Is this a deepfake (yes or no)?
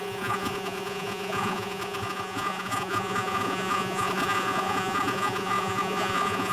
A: yes